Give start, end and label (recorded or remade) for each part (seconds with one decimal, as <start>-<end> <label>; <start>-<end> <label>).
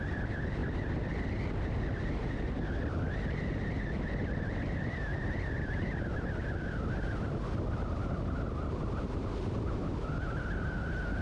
0.0-11.2 recorded